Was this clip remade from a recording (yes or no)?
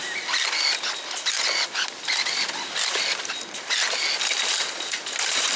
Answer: no